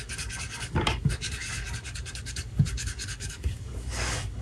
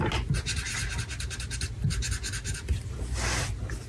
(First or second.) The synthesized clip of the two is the first